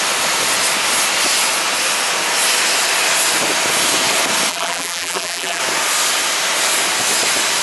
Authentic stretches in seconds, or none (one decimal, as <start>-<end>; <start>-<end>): 0.0-4.5; 5.6-7.6